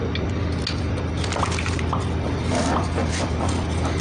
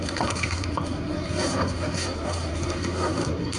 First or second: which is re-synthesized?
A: second